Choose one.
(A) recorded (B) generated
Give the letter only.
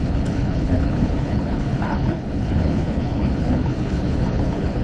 B